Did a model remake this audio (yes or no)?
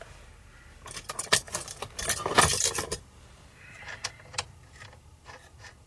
yes